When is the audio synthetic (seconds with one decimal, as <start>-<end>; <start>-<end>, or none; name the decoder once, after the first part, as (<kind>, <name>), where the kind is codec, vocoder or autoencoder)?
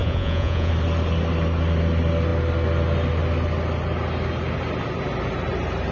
0.0-0.7 (vocoder, Vocos)